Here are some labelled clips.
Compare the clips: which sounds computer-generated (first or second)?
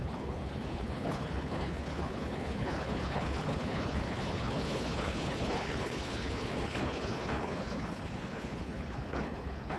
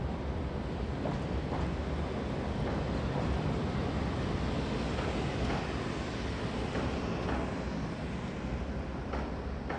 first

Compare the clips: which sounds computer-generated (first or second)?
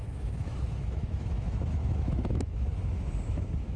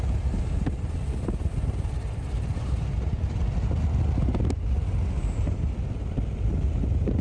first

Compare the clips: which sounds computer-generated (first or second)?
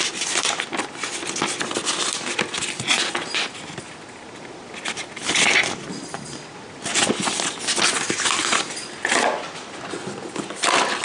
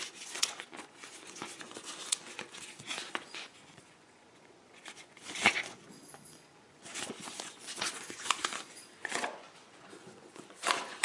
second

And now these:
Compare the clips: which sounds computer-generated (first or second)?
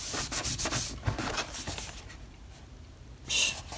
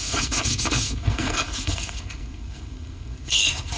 second